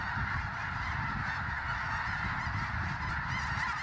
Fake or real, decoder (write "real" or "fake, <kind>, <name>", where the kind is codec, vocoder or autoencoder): real